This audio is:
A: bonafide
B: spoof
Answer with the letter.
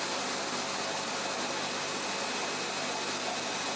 A